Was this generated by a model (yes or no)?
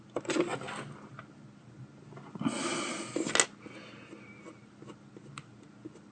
no